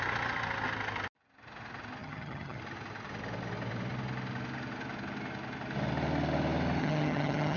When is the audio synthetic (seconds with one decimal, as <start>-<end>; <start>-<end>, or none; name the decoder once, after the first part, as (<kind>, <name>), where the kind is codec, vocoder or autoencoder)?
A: 2.0-2.6 (vocoder, HiFi-GAN); 6.8-7.6

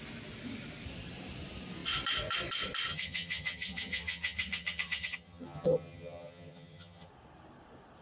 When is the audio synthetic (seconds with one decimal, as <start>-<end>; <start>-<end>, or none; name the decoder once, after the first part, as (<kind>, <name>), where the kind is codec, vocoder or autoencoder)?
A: 2.9-7.1 (vocoder, HiFi-GAN)

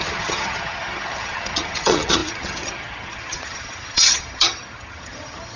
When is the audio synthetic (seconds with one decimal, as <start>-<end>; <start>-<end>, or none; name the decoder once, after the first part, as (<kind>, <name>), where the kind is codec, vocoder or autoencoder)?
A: 0.0-5.6 (vocoder, HiFi-GAN)

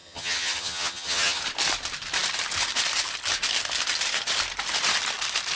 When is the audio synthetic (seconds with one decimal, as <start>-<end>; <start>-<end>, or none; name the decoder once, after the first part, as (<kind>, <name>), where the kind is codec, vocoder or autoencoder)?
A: 0.0-1.4 (vocoder, HiFi-GAN)

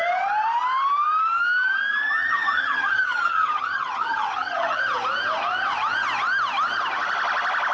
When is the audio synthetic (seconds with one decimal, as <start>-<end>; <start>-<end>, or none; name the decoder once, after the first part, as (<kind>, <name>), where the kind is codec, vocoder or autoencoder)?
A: 2.0-4.8 (vocoder, HiFi-GAN)

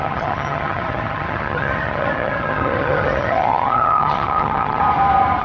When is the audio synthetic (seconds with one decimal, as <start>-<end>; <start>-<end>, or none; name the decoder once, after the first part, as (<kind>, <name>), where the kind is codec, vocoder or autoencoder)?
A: 0.0-4.8 (vocoder, HiFi-GAN)

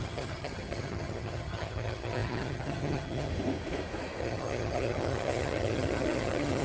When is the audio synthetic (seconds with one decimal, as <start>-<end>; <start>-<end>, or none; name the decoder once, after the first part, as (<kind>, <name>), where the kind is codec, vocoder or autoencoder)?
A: 0.0-3.3 (vocoder, HiFi-GAN); 4.2-6.6